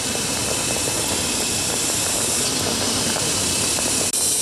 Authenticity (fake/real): real